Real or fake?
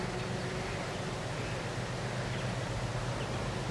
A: real